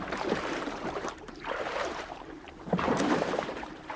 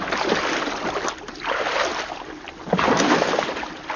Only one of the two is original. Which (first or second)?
second